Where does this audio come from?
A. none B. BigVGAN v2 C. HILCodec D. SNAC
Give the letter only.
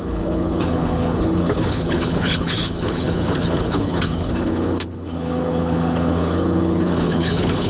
C